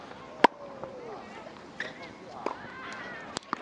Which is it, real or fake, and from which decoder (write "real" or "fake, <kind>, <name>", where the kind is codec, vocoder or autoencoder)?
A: real